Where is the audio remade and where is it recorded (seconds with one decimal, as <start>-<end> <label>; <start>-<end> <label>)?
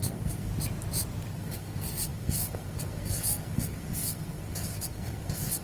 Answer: 0.0-0.5 remade; 0.5-1.3 recorded; 1.3-5.6 remade